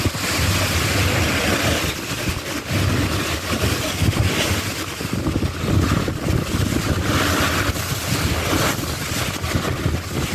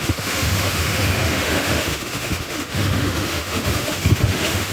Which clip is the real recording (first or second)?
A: first